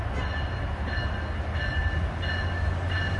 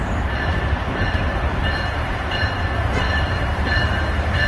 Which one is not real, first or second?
second